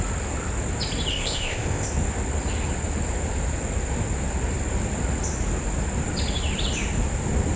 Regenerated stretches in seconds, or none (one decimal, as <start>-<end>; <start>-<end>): 1.1-1.9